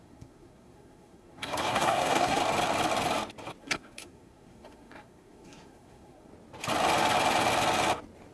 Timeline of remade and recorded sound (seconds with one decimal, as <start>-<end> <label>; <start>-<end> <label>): 0.0-2.4 remade; 2.4-3.6 recorded; 3.6-6.3 remade; 6.3-8.3 recorded